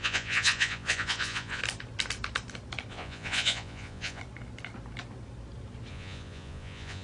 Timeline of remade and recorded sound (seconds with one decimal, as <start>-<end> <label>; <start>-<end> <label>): 0.0-1.6 remade; 1.6-2.9 recorded; 2.9-4.2 remade; 4.2-5.9 recorded; 5.9-7.0 remade